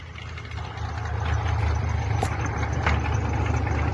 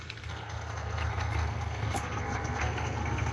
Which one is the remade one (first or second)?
second